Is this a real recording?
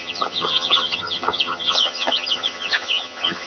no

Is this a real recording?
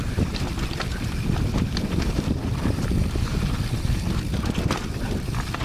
no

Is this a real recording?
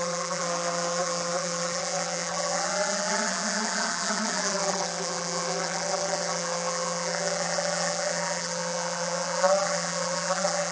no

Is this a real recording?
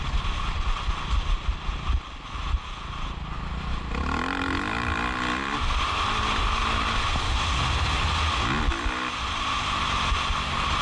yes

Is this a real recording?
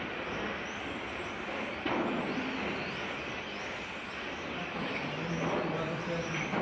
yes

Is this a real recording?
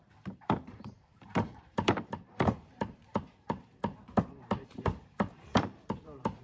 no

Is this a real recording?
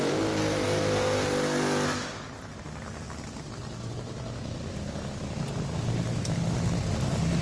yes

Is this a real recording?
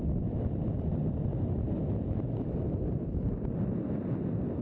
yes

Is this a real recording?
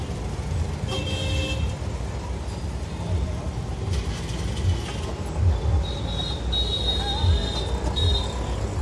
yes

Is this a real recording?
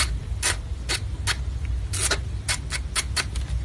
yes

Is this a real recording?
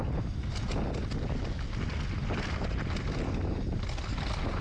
yes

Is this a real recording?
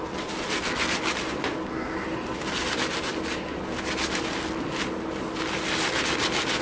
yes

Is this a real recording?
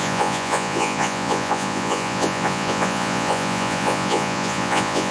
no